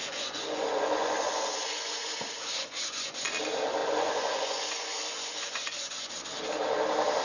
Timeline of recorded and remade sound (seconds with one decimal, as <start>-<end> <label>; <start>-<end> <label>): 0.0-3.3 remade; 3.3-3.8 recorded; 3.8-6.1 remade; 6.1-7.2 recorded